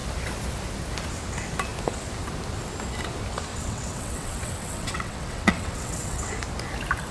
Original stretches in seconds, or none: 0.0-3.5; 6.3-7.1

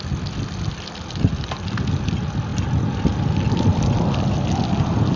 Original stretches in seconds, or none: 0.0-5.2

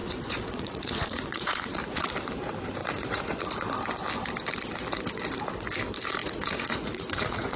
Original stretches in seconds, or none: 2.1-2.8; 3.4-6.2

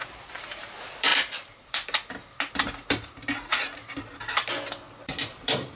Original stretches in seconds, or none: 0.6-1.1; 2.1-3.5; 4.2-5.8

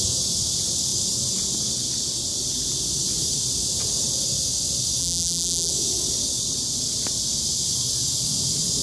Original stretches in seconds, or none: 0.0-5.0; 5.7-8.8